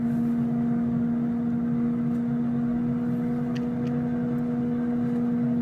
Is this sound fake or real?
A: real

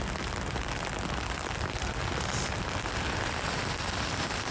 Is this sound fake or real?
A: real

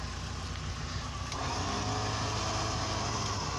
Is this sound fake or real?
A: real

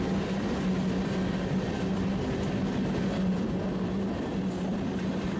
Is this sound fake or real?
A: real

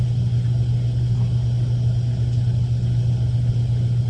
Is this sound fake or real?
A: real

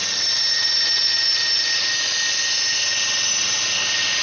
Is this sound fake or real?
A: real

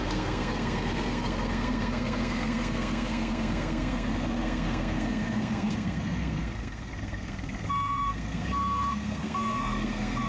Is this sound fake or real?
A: fake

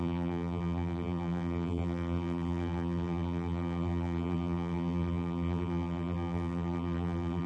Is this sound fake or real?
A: fake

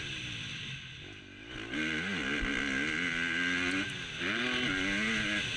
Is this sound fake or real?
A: real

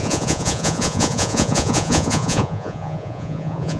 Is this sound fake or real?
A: fake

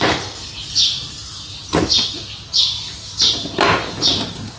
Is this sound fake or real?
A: real